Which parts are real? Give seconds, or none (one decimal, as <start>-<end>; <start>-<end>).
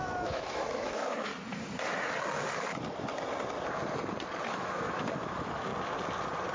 1.3-4.4; 5.7-6.5